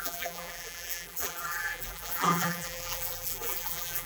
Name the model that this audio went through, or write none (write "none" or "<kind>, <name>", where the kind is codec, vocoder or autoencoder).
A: vocoder, BigVGAN v2